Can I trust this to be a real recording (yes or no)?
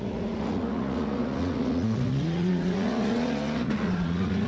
no